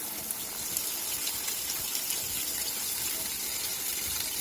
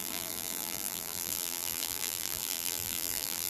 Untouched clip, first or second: first